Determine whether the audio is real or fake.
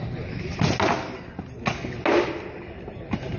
real